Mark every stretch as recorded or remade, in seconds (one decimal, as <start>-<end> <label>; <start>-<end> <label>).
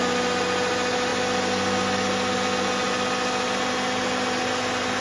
0.0-5.0 recorded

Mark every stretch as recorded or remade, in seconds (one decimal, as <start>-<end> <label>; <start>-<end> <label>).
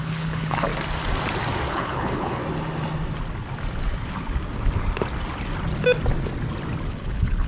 0.0-0.7 remade; 0.7-1.7 recorded; 1.7-2.4 remade; 2.4-6.9 recorded; 6.9-7.5 remade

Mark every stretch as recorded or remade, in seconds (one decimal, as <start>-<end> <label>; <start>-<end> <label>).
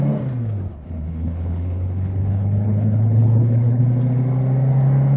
0.0-0.7 recorded; 0.7-3.8 remade; 3.8-5.2 recorded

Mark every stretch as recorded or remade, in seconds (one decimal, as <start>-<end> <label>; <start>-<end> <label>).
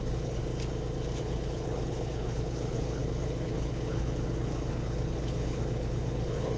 0.0-0.4 remade; 0.4-1.2 recorded; 1.2-6.6 remade